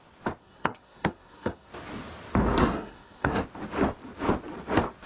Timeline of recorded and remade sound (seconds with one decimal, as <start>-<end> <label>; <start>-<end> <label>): 0.0-0.4 recorded; 0.4-1.7 remade; 1.7-2.6 recorded; 2.6-3.4 remade; 3.4-5.1 recorded